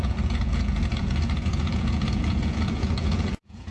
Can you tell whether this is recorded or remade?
remade